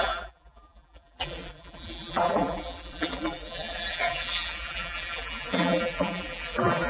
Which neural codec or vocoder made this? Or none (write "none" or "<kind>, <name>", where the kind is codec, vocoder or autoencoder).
vocoder, BigVGAN v2